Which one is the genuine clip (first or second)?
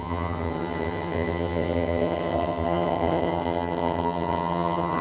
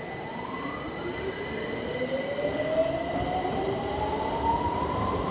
second